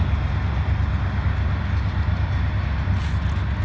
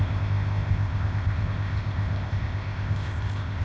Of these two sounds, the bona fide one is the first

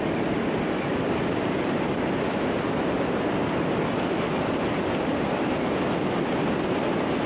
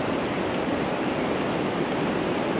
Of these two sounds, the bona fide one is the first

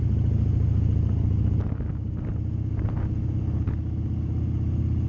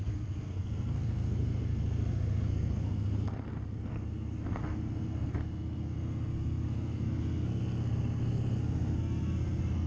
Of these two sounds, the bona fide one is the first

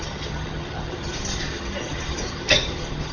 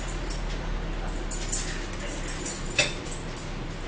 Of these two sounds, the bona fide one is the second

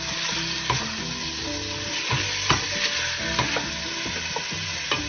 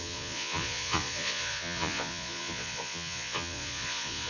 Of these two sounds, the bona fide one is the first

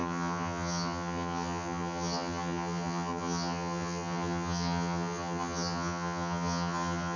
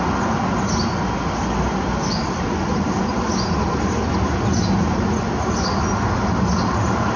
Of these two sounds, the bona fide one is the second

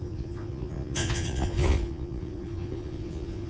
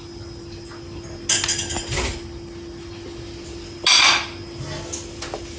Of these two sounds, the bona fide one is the second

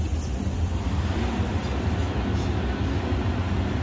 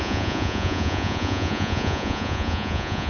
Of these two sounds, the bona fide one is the first